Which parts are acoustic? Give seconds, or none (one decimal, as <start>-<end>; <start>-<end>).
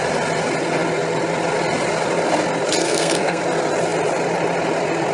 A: 0.0-2.8; 3.4-5.1